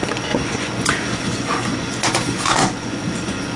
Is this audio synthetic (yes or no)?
yes